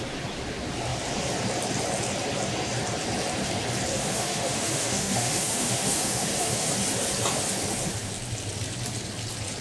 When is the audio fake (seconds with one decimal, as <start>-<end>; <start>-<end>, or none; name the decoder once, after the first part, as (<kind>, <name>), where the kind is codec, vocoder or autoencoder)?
3.9-6.7 (autoencoder, DAC-VAE)

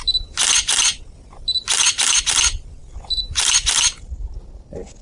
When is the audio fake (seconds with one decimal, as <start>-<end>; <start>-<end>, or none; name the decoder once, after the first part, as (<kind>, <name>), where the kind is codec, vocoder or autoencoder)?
none